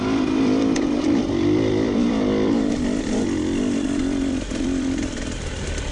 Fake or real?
fake